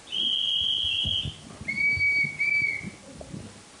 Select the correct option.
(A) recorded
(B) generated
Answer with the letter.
A